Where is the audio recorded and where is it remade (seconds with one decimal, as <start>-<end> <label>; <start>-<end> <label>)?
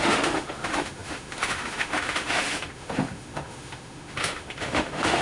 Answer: 0.0-5.2 remade